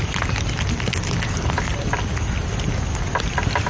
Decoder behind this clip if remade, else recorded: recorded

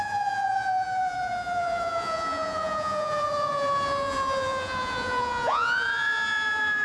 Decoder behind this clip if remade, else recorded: remade, vocoder, Vocos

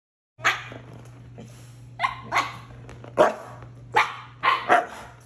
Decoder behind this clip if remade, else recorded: recorded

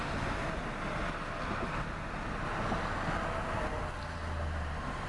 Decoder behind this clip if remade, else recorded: recorded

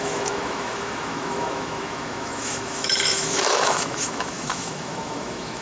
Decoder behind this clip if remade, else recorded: remade, autoencoder, DAC-VAE